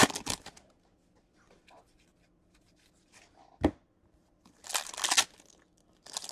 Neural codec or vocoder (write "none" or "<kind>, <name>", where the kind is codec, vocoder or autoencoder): none